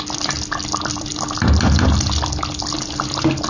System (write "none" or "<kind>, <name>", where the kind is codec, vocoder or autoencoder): none